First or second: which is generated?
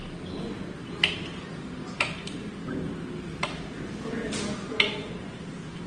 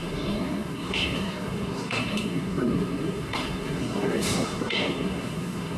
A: second